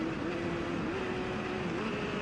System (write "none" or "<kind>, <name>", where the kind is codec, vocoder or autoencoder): none